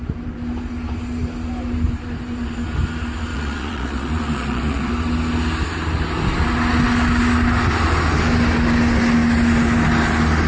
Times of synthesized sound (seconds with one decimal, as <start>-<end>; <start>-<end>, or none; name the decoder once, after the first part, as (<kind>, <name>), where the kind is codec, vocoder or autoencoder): 3.3-4.9 (vocoder, Vocos)